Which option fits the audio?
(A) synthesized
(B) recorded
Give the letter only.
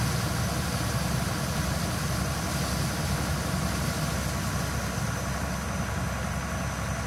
B